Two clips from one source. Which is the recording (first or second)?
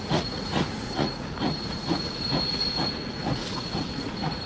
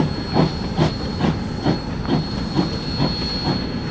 second